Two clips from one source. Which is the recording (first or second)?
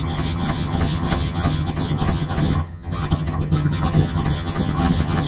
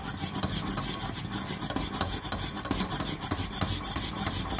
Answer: second